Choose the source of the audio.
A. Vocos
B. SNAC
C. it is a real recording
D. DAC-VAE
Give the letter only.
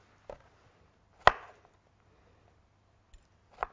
C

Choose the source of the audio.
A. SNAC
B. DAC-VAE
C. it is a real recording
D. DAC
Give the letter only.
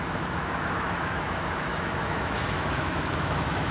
B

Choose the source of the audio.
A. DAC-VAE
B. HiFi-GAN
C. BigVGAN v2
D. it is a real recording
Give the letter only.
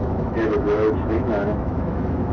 A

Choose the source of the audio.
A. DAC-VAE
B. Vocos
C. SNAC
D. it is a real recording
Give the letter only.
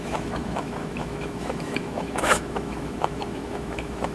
A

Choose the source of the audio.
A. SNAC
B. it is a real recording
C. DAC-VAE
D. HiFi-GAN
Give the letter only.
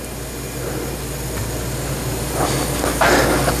B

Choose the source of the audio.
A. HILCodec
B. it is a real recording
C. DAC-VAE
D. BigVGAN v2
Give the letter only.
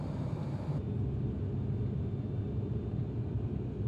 B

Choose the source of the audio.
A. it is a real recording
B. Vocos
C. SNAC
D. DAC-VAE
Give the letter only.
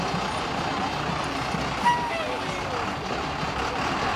A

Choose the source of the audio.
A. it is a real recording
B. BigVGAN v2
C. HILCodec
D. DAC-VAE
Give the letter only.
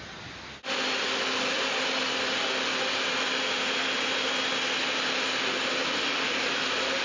A